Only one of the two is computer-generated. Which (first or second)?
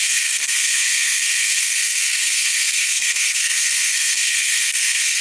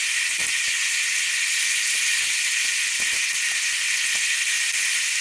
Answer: first